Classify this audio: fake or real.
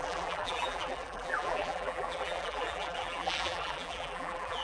fake